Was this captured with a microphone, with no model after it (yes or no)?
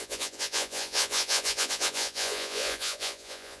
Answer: no